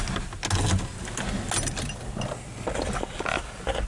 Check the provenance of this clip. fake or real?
real